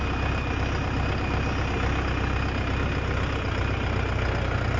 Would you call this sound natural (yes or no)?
yes